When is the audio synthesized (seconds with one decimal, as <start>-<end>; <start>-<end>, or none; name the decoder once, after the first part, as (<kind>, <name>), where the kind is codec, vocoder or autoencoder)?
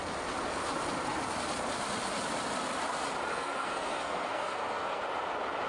3.3-5.0 (codec, SNAC)